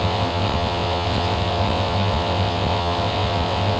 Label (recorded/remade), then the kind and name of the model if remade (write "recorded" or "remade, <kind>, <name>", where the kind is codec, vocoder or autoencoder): remade, vocoder, WaveNeXt